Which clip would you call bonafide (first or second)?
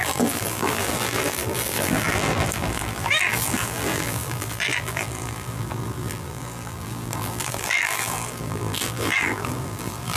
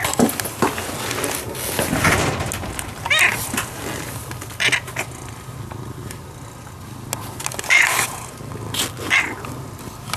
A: second